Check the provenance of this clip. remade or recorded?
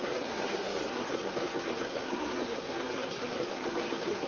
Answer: remade